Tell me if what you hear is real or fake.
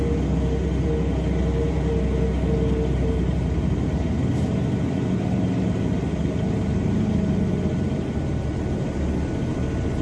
real